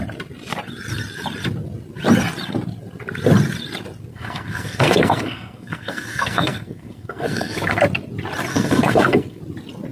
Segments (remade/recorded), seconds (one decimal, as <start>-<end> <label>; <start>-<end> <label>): 0.0-4.1 recorded; 4.1-7.8 remade; 7.8-8.5 recorded; 8.5-9.4 remade; 9.4-9.9 recorded